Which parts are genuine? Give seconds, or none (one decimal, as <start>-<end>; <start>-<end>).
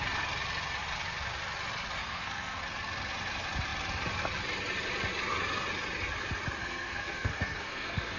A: 0.0-2.0; 2.6-6.6